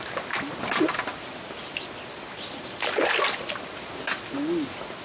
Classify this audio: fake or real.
real